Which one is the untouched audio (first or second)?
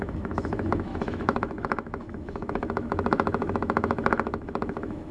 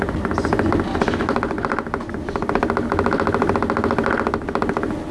second